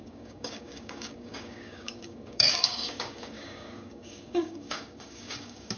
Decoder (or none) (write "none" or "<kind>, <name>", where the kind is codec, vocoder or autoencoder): codec, DAC